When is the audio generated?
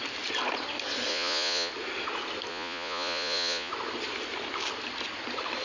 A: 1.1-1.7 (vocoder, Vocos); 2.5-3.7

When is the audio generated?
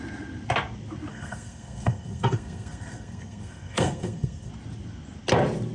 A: 1.1-4.5 (codec, SNAC)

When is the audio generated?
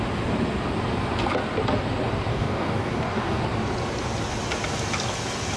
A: 2.3-3.4 (codec, DAC)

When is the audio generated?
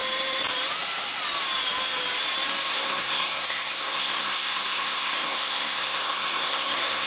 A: 2.7-7.1 (codec, SNAC)